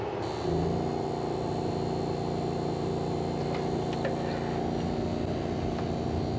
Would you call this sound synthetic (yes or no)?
no